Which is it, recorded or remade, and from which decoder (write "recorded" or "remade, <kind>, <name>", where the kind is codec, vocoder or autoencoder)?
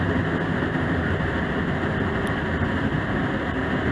recorded